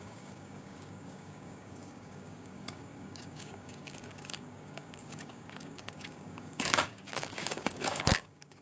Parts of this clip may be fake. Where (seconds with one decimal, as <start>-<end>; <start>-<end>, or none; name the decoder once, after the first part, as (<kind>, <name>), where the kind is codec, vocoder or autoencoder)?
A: 0.0-8.6 (codec, DAC)